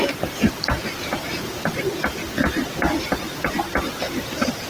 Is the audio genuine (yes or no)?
yes